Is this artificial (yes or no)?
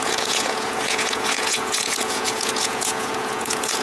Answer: yes